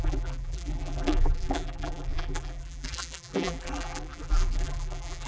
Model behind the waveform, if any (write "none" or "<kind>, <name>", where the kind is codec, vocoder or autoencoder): vocoder, BigVGAN v2